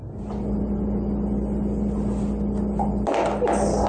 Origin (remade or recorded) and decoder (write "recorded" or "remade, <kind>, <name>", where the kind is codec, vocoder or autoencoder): recorded